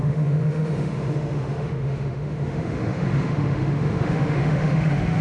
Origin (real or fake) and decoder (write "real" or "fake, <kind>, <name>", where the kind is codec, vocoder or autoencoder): fake, autoencoder, DAC-VAE